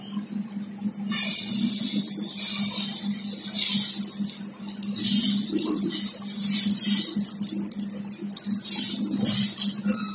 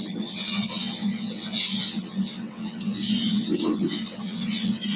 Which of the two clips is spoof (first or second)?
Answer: second